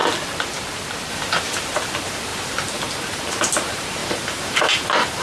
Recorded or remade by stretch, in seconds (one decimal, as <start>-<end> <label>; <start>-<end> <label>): 0.0-1.1 recorded; 1.1-5.2 remade